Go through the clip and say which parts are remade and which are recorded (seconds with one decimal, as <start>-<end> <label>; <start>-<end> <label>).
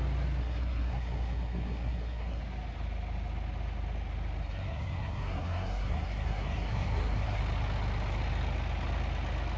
0.0-0.4 recorded; 0.4-2.4 remade; 2.4-4.4 recorded; 4.4-7.4 remade; 7.4-9.6 recorded